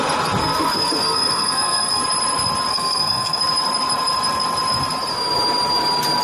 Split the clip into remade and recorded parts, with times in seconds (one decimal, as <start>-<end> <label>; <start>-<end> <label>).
0.0-0.4 recorded; 0.4-2.0 remade; 2.0-2.7 recorded; 2.7-3.4 remade; 3.4-6.2 recorded